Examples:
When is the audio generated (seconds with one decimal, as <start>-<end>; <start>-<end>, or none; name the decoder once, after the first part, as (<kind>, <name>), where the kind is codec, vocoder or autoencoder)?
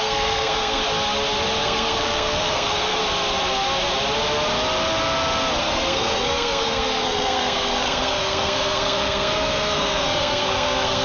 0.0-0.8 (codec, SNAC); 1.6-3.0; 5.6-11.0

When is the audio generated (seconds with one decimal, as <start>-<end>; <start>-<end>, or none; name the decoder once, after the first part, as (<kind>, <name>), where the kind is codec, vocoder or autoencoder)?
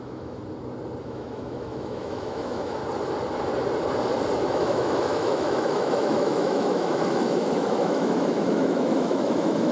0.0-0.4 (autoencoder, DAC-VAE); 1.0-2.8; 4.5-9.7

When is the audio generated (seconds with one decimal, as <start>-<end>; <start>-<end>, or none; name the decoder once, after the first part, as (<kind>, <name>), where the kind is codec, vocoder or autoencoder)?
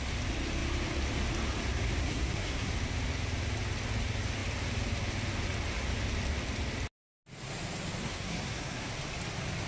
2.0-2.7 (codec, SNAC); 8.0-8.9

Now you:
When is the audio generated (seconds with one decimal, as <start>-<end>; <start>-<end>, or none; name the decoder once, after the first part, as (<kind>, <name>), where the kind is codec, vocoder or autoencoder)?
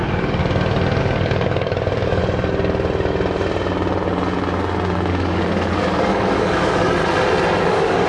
0.0-0.4 (codec, DAC); 1.0-2.2; 5.1-7.0; 7.6-8.1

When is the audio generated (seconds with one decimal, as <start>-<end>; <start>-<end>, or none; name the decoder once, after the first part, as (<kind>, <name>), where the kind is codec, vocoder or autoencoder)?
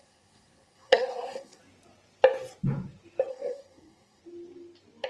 0.0-1.6 (codec, SNAC); 3.3-4.2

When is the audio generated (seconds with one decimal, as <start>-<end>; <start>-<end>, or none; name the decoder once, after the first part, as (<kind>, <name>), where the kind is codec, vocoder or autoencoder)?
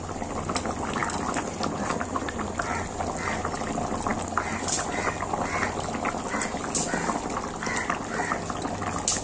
none